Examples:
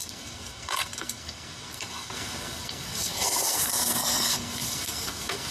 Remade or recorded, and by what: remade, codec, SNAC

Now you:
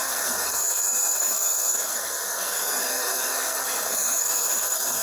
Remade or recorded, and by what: remade, codec, SNAC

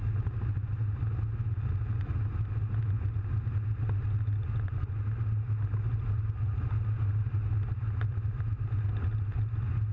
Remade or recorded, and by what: recorded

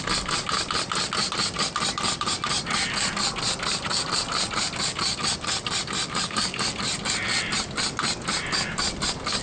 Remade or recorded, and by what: recorded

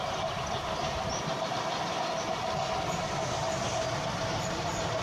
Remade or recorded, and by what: recorded